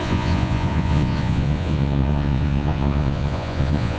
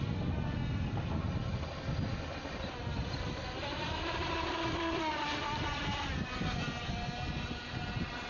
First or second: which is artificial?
first